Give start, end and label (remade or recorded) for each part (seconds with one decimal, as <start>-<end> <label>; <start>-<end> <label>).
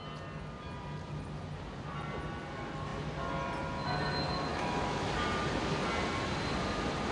0.0-4.5 recorded; 4.5-5.1 remade; 5.1-7.1 recorded